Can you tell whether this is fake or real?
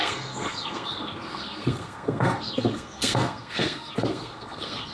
fake